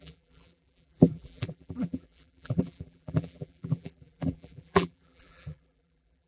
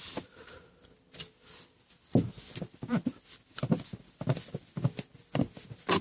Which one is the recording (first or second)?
second